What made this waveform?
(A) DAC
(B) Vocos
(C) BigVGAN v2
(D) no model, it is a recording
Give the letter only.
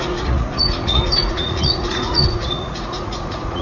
B